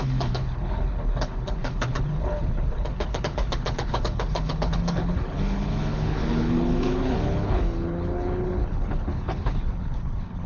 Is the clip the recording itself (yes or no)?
no